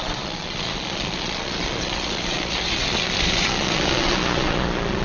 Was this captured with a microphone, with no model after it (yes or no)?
no